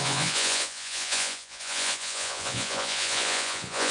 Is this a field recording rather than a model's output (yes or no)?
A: no